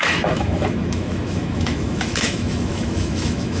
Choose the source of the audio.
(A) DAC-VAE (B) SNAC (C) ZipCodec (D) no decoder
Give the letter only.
A